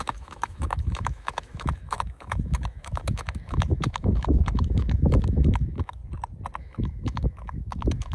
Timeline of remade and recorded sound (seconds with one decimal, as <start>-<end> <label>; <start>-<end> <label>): 0.0-6.0 remade; 6.0-6.6 recorded; 6.6-8.1 remade

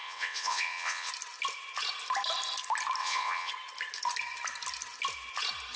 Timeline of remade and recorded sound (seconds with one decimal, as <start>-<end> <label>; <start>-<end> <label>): 0.0-1.1 remade; 1.1-3.0 recorded; 3.0-3.5 remade; 3.5-5.8 recorded

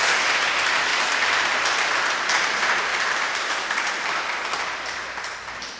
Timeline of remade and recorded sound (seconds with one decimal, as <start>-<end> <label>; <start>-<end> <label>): 0.0-0.9 recorded; 0.9-1.9 remade; 1.9-2.9 recorded; 2.9-4.2 remade; 4.2-5.8 recorded

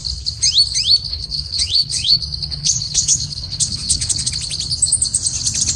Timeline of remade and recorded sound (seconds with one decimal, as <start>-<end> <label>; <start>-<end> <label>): 0.0-1.1 recorded; 1.1-2.2 remade; 2.2-2.6 recorded; 2.6-4.3 remade; 4.3-5.8 recorded

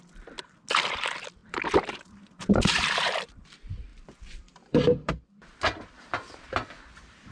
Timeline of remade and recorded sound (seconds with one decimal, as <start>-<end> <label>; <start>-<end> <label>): 0.0-1.4 recorded; 1.4-3.3 remade; 3.3-3.9 recorded; 3.9-5.3 remade; 5.3-7.3 recorded

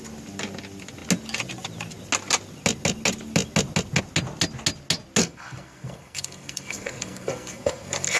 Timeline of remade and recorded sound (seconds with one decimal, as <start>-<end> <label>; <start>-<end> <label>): 0.0-5.2 recorded; 5.2-8.2 remade

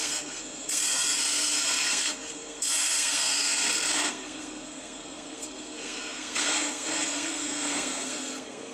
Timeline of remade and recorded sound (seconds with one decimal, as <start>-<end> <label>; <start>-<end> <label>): 0.0-8.7 remade

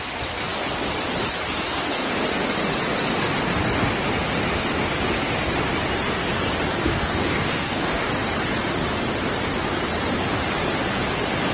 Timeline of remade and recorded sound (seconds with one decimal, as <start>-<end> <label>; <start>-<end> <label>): 0.0-6.8 recorded; 6.8-8.1 remade; 8.1-11.5 recorded